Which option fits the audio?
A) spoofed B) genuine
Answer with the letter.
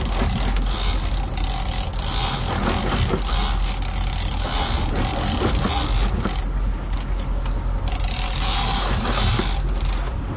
B